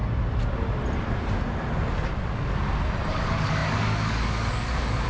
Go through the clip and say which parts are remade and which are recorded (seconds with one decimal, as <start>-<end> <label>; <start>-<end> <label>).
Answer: 0.0-3.1 recorded; 3.1-5.1 remade